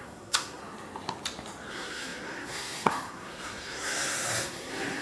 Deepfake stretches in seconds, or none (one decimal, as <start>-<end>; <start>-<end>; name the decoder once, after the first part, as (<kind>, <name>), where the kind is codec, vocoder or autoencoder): 0.0-0.6 (codec, SNAC); 1.7-5.0

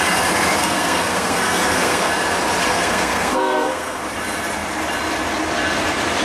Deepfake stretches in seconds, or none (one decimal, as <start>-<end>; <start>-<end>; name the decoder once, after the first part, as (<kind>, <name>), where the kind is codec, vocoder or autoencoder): 0.6-2.1 (codec, SNAC); 2.7-4.0

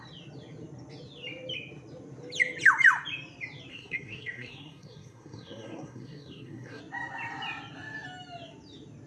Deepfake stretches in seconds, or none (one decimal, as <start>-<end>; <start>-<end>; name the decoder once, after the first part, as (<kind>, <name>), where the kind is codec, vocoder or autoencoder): 3.7-6.8 (codec, SNAC)

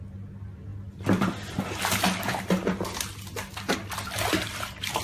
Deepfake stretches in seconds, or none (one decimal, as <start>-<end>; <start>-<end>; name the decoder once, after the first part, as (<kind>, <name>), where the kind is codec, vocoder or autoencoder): none

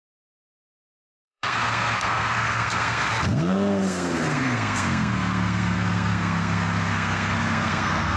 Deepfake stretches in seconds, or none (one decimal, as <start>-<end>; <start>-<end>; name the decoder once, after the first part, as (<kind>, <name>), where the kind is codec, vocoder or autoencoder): 0.0-8.2 (codec, SNAC)

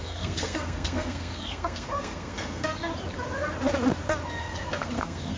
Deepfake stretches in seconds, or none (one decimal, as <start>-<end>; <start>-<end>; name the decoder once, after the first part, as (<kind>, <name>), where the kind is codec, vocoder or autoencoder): 0.0-2.9 (codec, SNAC); 4.4-5.4

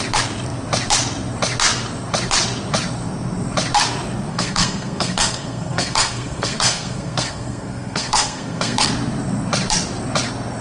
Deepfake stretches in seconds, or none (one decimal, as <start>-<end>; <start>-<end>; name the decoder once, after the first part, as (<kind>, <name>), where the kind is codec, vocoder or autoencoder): 4.3-8.9 (codec, SNAC)